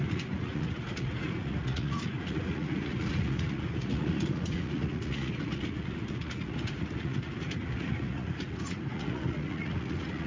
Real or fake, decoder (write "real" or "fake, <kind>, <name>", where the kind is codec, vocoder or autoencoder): fake, vocoder, Vocos